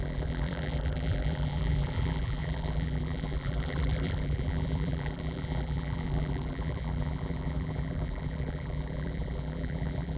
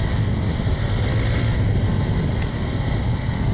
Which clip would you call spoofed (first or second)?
first